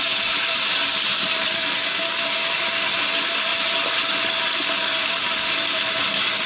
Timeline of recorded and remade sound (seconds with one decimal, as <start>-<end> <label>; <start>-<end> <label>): 0.0-6.5 recorded